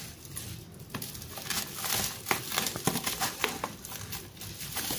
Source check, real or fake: real